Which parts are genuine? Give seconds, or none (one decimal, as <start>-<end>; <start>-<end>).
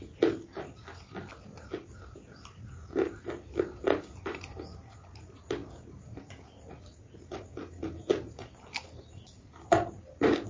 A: 0.0-10.5